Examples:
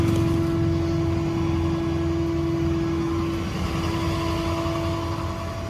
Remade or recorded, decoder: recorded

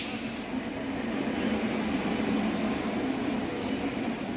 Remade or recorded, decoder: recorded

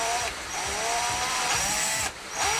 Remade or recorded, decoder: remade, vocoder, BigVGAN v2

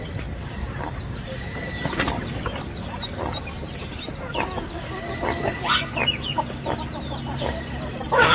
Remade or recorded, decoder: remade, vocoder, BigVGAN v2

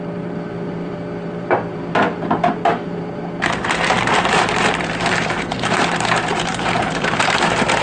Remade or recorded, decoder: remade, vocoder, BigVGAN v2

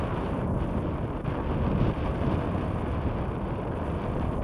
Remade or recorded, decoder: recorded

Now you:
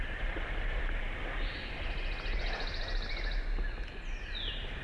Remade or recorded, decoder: recorded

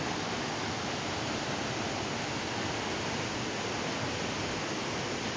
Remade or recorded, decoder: recorded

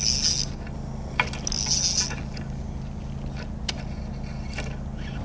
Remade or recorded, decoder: recorded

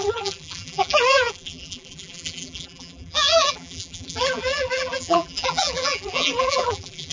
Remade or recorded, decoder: remade, vocoder, BigVGAN v2